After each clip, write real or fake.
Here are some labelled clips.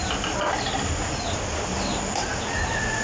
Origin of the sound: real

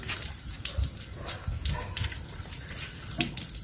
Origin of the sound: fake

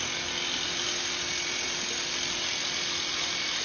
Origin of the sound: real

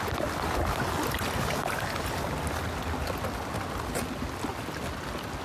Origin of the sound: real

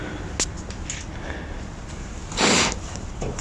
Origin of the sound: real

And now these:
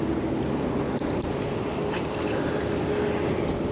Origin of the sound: real